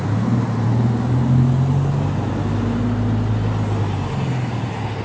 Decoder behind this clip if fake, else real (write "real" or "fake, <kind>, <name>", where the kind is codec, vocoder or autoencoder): real